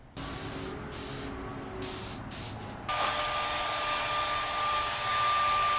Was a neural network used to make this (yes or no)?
no